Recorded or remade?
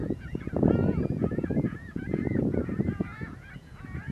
remade